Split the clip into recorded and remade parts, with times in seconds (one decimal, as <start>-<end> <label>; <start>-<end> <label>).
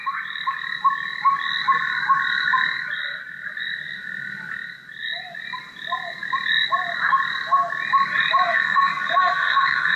0.0-8.5 recorded; 8.5-10.0 remade